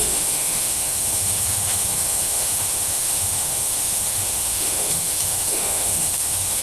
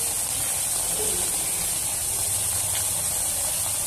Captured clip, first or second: second